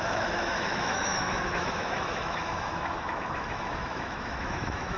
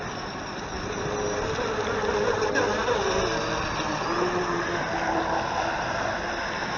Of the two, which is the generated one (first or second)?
first